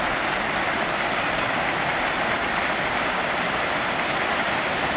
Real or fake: real